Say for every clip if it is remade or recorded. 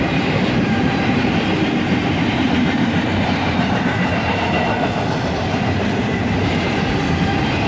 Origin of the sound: remade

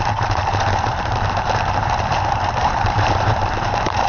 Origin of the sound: remade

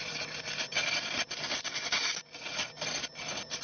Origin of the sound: recorded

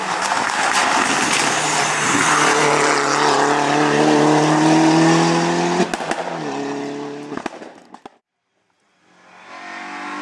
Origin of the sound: recorded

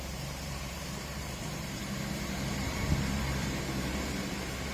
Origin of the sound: remade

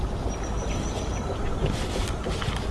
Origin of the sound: recorded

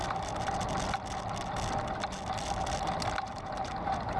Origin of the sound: recorded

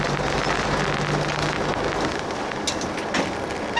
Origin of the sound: recorded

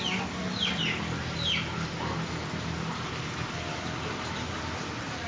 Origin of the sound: remade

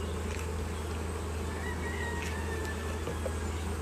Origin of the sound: recorded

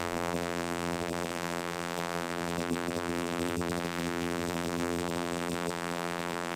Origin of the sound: remade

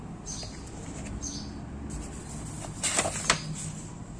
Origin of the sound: recorded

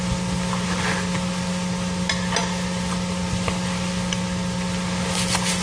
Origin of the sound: recorded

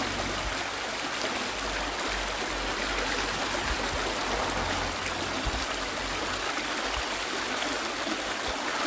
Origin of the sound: recorded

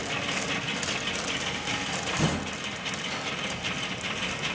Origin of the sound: recorded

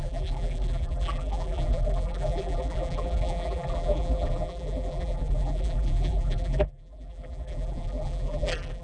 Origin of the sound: remade